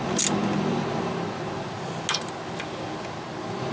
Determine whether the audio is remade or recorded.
recorded